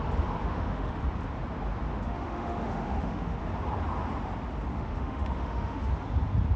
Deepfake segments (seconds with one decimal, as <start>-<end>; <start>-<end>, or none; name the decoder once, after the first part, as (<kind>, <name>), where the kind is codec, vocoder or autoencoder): 0.4-1.0 (autoencoder, DAC-VAE); 1.9-3.4; 4.7-5.9